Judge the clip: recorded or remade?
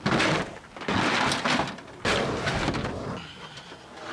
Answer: recorded